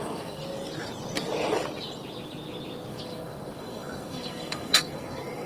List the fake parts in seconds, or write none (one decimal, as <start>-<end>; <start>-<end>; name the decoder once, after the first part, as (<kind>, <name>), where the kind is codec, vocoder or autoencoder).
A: 0.0-0.4 (codec, SNAC); 2.9-5.5